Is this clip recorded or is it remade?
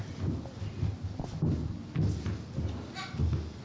recorded